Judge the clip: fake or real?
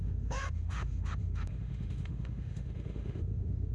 fake